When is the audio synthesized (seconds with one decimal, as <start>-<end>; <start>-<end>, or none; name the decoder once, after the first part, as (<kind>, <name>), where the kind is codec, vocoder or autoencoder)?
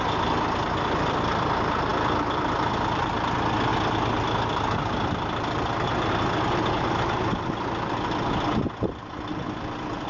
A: none